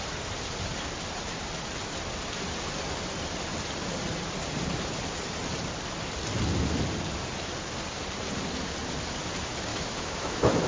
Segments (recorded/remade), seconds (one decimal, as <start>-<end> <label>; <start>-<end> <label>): 0.0-9.7 recorded; 9.7-10.7 remade